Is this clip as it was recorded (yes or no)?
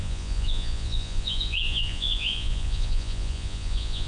no